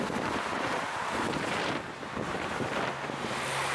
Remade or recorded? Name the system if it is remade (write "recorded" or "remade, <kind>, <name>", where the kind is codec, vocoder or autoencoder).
remade, vocoder, BigVGAN v2